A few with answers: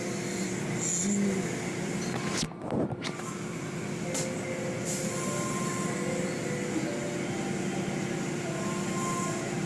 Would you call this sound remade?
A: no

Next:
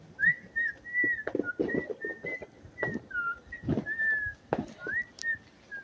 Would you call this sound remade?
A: no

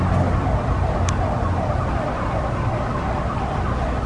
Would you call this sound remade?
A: no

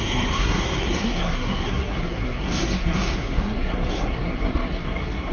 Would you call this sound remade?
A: yes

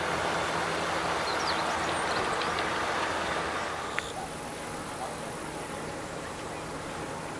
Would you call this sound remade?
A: no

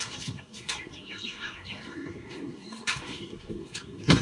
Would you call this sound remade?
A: yes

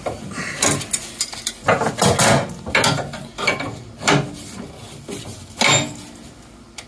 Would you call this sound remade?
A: no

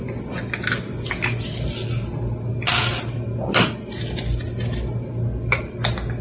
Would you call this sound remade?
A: no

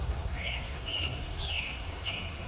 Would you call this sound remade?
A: yes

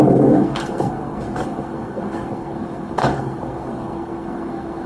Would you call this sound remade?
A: yes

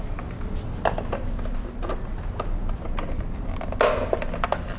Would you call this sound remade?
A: no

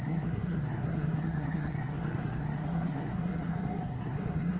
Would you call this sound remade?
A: yes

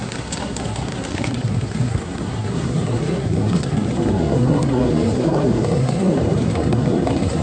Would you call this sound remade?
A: yes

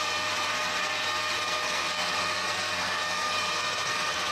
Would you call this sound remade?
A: yes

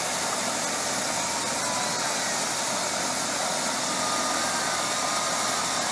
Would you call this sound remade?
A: no